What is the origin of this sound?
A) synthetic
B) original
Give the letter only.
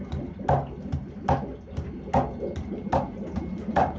B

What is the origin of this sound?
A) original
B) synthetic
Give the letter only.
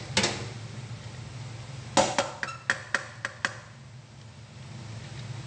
A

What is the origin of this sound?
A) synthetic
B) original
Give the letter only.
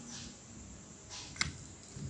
B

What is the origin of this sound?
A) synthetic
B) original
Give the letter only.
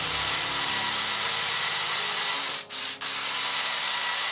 B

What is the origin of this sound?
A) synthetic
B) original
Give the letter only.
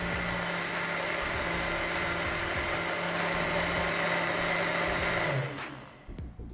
B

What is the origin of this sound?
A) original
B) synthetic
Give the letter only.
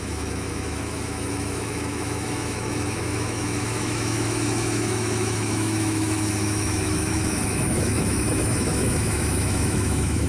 B